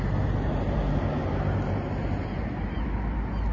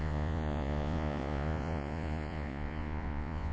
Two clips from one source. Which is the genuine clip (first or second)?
first